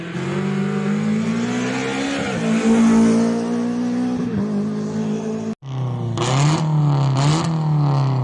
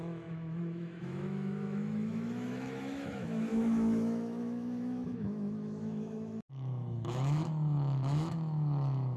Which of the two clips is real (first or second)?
first